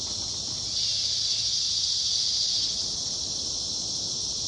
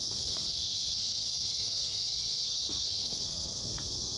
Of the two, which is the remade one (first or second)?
second